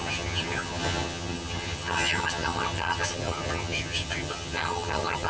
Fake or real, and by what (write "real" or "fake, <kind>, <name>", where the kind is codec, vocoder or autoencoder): fake, vocoder, HiFi-GAN